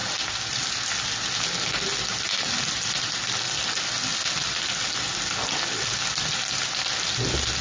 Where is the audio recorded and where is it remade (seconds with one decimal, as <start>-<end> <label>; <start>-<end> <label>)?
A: 0.0-0.6 remade; 0.6-7.6 recorded